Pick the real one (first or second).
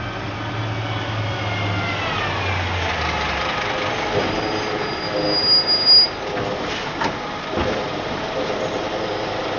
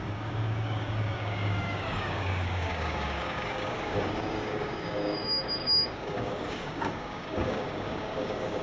first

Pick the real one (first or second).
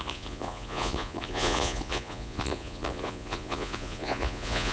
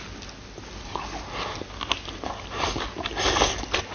second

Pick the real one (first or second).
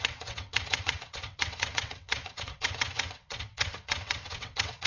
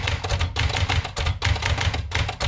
second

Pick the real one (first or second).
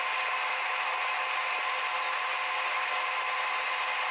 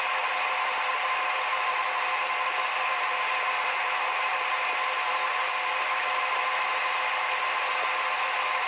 first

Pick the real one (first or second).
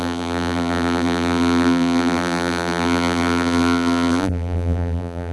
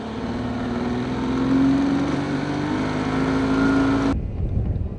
second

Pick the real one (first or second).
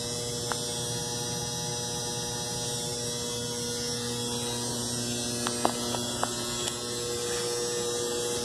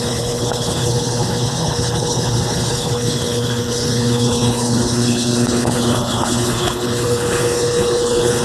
first